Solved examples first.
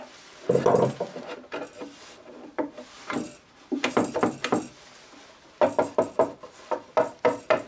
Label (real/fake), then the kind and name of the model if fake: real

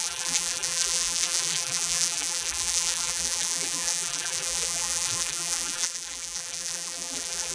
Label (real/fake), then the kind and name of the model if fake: fake, vocoder, BigVGAN v2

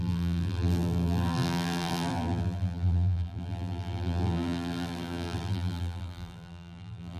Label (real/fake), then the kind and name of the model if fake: fake, vocoder, BigVGAN v2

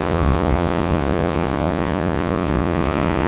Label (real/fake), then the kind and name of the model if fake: fake, vocoder, Vocos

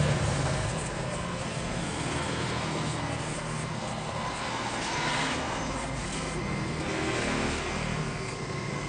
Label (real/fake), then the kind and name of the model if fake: fake, codec, SNAC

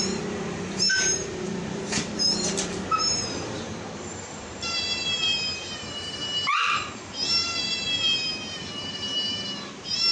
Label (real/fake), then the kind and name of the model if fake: fake, vocoder, BigVGAN v2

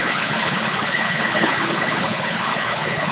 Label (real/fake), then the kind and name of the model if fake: fake, codec, HILCodec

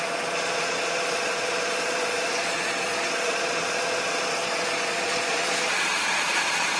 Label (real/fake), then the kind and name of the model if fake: fake, vocoder, Vocos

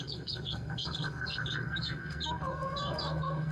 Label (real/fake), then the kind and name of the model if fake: fake, codec, SNAC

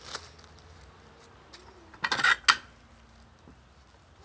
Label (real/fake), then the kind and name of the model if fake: real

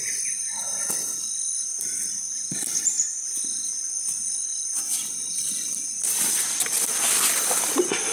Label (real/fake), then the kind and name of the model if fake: real